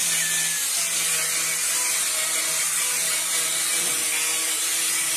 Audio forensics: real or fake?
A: real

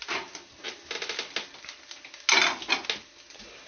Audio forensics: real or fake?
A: real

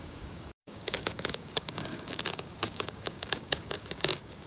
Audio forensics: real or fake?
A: fake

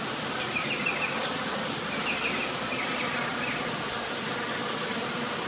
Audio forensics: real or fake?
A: real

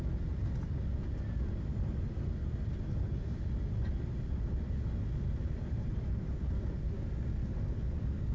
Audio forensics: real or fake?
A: real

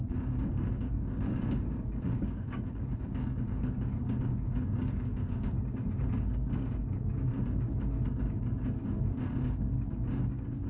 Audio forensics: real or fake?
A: fake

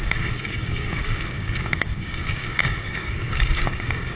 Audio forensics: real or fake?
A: fake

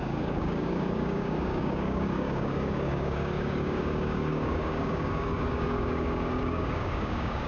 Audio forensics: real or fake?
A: fake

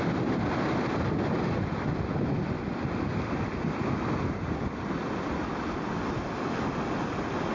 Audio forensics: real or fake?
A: real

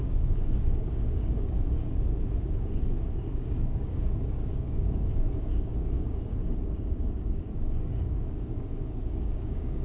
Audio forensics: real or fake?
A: fake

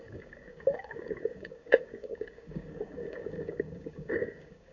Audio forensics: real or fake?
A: fake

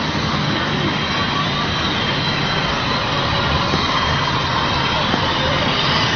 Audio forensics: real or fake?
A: real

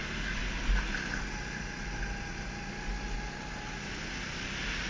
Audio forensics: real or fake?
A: real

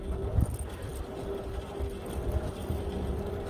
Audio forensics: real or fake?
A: real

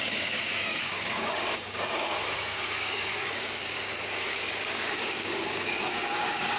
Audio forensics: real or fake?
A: fake